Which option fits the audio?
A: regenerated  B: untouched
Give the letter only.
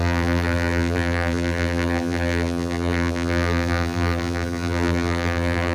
A